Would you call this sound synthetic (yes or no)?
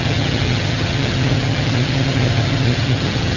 yes